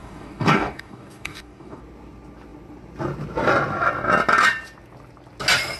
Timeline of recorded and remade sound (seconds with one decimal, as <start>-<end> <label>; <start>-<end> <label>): 0.0-1.8 remade; 1.8-5.8 recorded